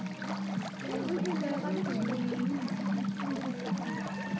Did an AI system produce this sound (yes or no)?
no